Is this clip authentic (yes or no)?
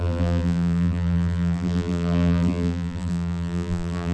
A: no